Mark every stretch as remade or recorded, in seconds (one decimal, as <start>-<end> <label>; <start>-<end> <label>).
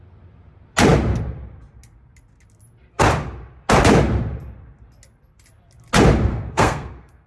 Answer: 0.0-6.3 recorded; 6.3-7.3 remade